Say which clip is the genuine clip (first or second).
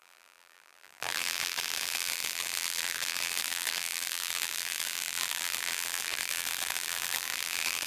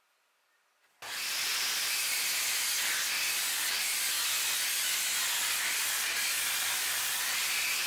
second